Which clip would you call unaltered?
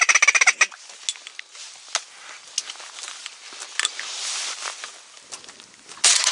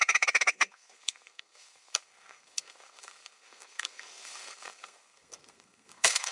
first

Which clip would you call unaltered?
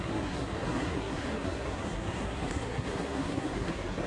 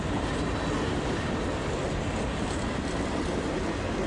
second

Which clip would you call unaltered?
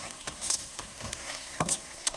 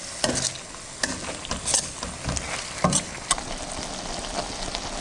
second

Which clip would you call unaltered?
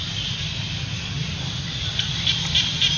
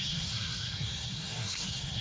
first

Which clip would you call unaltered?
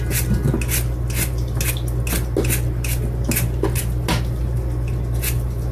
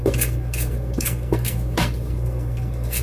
first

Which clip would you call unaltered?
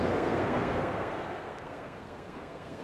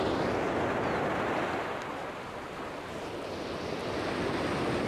second